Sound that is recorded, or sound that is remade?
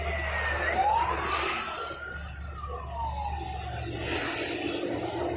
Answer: recorded